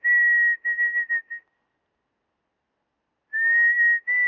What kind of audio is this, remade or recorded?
recorded